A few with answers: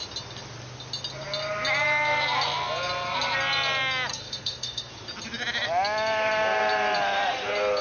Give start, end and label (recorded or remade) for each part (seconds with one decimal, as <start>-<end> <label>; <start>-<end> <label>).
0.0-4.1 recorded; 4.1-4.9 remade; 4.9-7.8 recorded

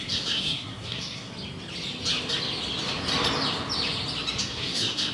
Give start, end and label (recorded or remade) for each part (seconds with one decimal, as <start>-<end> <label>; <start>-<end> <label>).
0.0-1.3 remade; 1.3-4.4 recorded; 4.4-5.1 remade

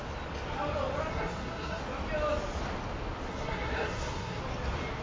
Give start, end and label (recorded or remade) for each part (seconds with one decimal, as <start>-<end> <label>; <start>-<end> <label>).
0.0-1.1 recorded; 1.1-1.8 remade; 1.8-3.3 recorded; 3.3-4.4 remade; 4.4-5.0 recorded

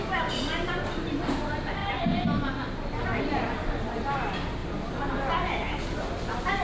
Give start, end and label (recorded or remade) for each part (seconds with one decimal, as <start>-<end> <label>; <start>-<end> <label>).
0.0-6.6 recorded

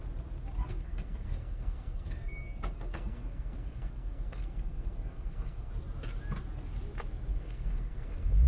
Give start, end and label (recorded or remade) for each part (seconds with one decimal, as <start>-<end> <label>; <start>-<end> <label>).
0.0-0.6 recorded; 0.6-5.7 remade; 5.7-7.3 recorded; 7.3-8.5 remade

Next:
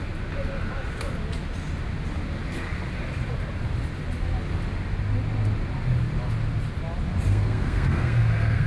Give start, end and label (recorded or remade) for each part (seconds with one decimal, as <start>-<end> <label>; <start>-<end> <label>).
0.0-7.3 recorded; 7.3-8.7 remade

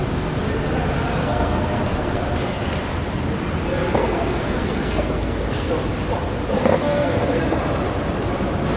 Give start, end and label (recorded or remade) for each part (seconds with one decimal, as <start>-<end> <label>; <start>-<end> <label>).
0.0-1.2 recorded; 1.2-2.2 remade; 2.2-4.0 recorded; 4.0-5.7 remade; 5.7-6.6 recorded; 6.6-7.4 remade; 7.4-8.8 recorded